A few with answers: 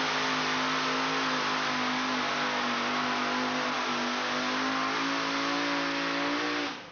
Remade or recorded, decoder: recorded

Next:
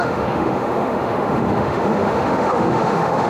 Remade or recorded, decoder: remade, autoencoder, DAC-VAE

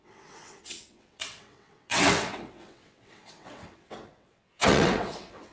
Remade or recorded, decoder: remade, vocoder, WaveNeXt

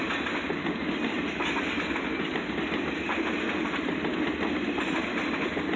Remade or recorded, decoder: recorded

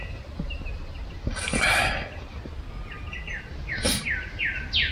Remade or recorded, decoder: recorded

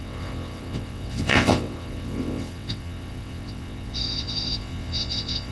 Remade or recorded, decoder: remade, vocoder, WaveNeXt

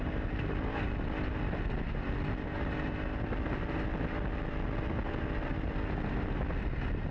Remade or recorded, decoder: recorded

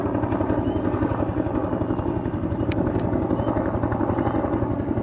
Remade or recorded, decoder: recorded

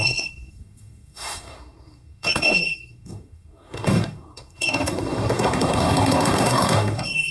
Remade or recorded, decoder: remade, codec, SNAC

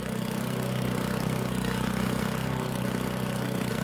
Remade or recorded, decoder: remade, codec, SNAC